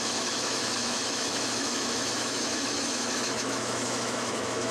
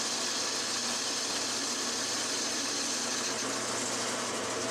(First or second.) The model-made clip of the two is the first